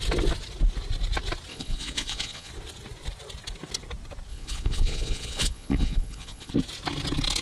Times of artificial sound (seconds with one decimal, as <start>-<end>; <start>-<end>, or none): 1.5-2.5; 4.3-6.5